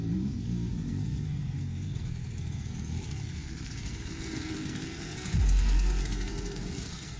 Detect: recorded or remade remade